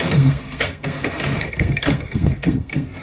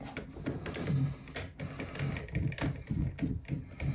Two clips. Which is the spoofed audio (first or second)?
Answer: first